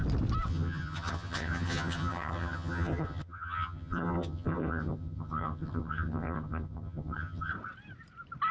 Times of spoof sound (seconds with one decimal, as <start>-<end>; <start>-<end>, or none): 0.5-7.5